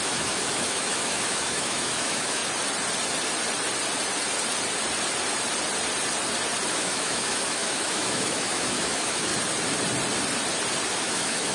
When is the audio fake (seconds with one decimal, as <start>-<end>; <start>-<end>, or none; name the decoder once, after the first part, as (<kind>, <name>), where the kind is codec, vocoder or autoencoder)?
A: 0.0-2.4 (autoencoder, DAC-VAE); 6.7-9.3; 11.0-11.5